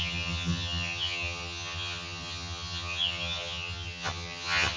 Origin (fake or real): fake